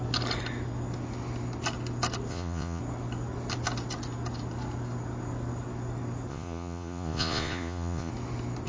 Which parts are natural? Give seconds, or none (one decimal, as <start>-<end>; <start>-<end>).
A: 0.0-2.3; 2.8-6.3; 8.1-8.7